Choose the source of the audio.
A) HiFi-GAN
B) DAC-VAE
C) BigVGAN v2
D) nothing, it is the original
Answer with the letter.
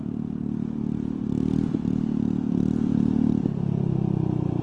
D